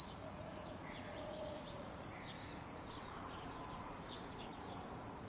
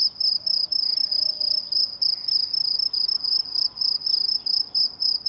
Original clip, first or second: second